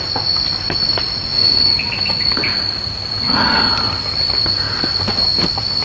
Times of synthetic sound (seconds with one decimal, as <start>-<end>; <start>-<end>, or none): none